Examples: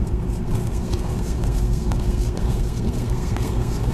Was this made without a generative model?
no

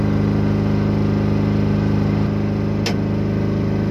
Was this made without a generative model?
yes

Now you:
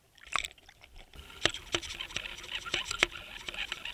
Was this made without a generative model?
yes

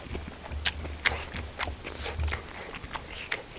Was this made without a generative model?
yes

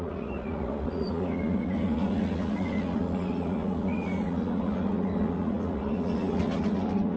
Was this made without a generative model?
no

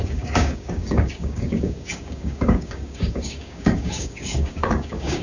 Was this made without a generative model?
no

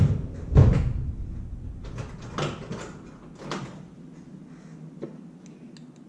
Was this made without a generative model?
yes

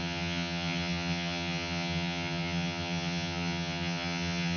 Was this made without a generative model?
no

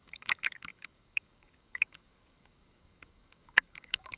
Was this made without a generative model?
no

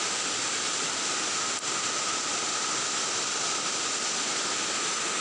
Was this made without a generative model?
yes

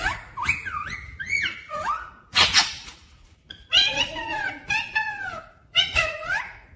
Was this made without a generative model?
no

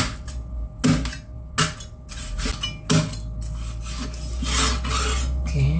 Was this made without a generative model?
yes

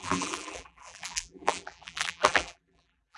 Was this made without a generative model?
no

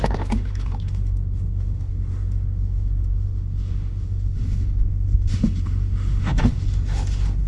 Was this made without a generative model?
no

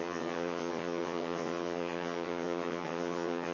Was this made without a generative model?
no